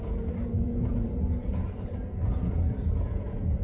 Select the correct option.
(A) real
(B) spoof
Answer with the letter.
B